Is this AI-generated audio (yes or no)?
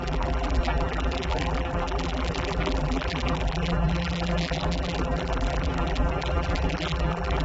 yes